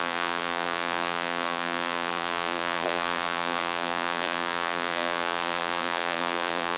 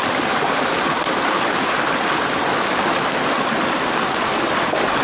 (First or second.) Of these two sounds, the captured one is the second